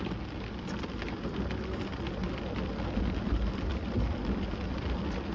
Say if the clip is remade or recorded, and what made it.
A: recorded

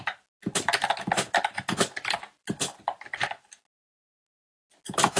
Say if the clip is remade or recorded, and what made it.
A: recorded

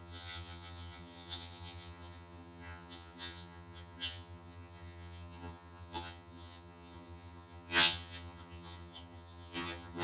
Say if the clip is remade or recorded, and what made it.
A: remade, vocoder, HiFi-GAN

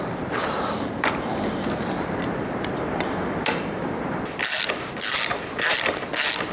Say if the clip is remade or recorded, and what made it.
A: remade, vocoder, BigVGAN v2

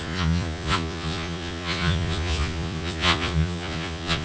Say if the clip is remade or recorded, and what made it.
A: remade, vocoder, Vocos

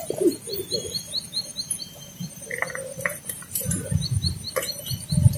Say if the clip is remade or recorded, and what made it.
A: remade, vocoder, BigVGAN v2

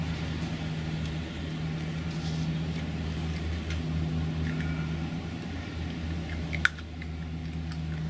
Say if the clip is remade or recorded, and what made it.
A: recorded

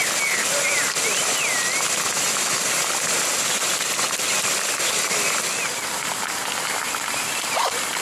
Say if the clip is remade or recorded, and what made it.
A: recorded